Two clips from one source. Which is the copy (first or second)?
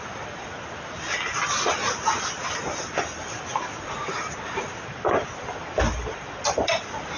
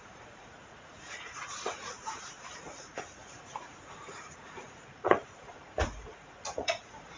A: second